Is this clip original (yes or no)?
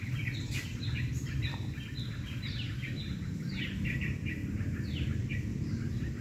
no